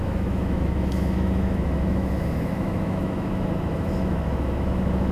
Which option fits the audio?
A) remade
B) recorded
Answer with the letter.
A